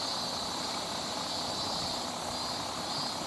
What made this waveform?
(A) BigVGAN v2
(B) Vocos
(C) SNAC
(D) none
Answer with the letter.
D